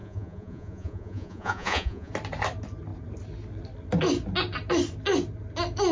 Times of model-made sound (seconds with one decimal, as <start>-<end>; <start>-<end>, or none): 0.0-2.1